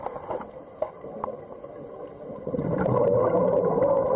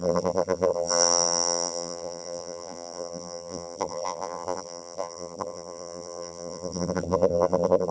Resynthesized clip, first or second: second